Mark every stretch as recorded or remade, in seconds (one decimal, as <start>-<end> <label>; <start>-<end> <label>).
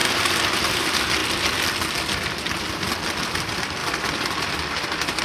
0.0-0.6 recorded; 0.6-1.2 remade; 1.2-3.1 recorded; 3.1-5.2 remade